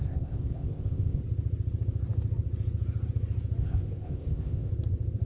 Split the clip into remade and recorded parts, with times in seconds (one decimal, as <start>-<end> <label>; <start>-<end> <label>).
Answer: 0.0-1.2 remade; 1.2-3.6 recorded; 3.6-4.7 remade; 4.7-5.2 recorded